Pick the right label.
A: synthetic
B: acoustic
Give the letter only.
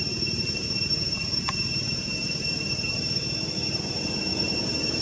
A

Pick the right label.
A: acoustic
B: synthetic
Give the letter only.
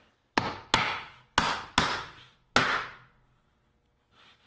A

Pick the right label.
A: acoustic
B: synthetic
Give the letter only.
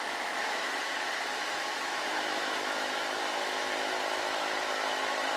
B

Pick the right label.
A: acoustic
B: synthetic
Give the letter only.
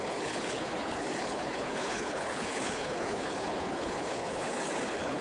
B